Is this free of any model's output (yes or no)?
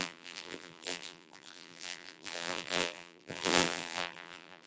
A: no